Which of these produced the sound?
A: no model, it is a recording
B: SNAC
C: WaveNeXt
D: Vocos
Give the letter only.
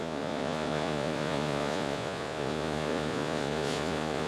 D